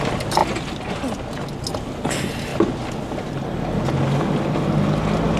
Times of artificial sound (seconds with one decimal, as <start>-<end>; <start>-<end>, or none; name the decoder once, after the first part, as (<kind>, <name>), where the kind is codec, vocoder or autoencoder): none